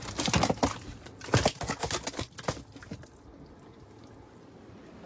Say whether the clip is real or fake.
real